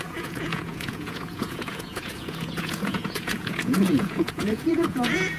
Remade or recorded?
remade